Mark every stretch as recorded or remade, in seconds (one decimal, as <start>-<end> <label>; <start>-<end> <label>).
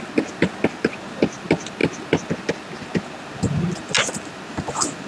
0.0-5.1 recorded